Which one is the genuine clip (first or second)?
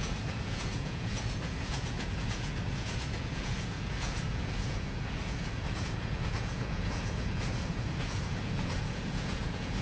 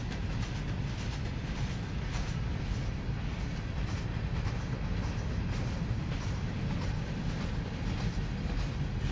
second